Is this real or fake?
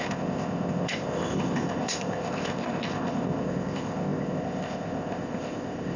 fake